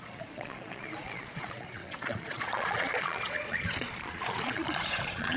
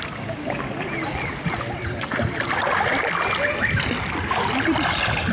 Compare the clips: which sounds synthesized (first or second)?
first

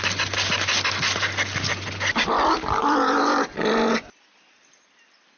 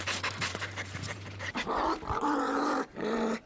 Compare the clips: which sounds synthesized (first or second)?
second